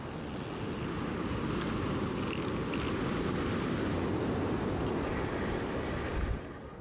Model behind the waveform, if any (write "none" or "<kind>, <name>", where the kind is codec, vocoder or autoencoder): none